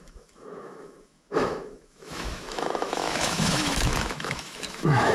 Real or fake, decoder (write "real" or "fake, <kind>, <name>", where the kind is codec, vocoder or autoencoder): fake, autoencoder, DAC-VAE